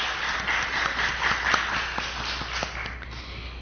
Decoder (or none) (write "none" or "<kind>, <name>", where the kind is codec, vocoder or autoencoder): none